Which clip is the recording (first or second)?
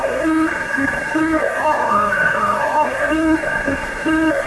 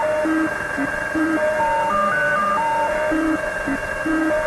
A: second